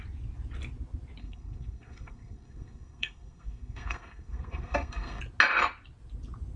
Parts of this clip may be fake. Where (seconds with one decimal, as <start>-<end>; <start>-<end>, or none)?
1.2-5.2